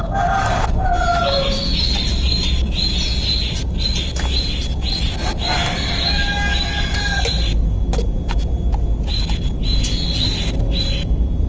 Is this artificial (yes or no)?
no